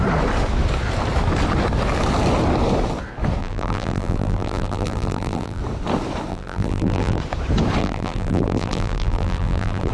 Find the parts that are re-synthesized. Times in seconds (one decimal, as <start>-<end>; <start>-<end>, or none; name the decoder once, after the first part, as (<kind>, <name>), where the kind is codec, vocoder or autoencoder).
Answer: 3.4-5.6 (vocoder, BigVGAN v2); 6.3-7.2; 7.8-9.9